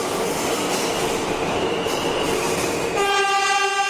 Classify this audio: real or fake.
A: real